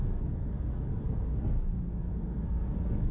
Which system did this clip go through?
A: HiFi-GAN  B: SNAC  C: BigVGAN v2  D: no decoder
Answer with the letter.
B